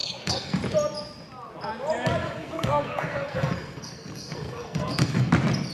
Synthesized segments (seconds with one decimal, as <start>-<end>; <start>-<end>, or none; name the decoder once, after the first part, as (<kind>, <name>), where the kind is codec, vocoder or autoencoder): 0.0-0.6 (codec, SNAC); 2.2-5.3